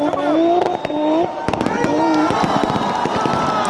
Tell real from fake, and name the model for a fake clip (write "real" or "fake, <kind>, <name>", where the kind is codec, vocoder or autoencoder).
real